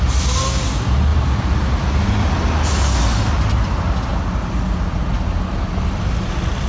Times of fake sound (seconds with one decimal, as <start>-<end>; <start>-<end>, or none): 1.1-2.1